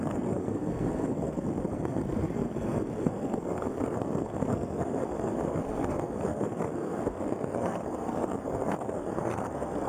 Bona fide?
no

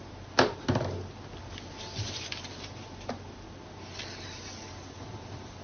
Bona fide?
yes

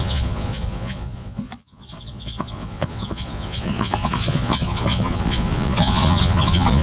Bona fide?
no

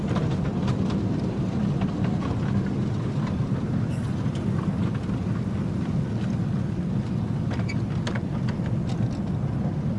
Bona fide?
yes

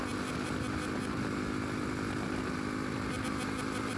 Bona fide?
no